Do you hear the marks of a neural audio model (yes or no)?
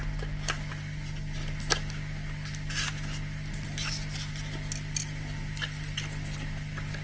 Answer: no